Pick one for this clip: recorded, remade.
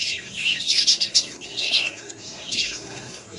remade